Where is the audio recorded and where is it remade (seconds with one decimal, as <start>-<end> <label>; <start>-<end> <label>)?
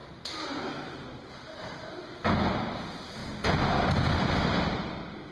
0.0-5.3 recorded